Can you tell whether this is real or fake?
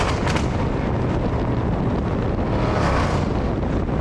real